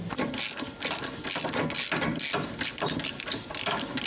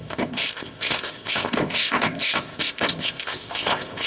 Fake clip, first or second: second